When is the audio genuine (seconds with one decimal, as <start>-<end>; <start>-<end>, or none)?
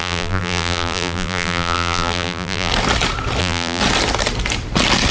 2.7-3.4; 3.8-5.1